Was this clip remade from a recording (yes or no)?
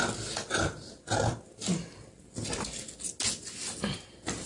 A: no